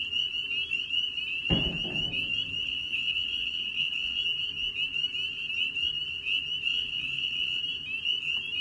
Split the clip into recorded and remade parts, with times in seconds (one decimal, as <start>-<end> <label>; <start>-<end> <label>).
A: 0.0-2.6 recorded; 2.6-4.2 remade; 4.2-6.7 recorded; 6.7-7.6 remade; 7.6-8.6 recorded